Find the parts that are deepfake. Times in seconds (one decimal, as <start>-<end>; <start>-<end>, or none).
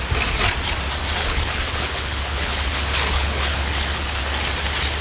1.2-4.2